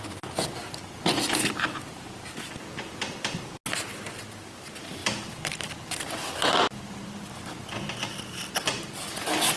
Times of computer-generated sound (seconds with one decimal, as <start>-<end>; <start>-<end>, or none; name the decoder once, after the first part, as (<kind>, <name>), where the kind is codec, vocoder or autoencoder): none